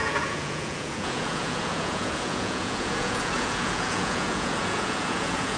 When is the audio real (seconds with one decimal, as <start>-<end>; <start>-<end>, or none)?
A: none